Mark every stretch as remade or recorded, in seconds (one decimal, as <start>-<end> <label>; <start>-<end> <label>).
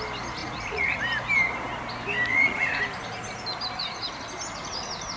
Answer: 0.0-0.4 recorded; 0.4-1.0 remade; 1.0-2.3 recorded; 2.3-2.8 remade; 2.8-5.2 recorded